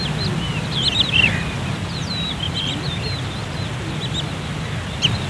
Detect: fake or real real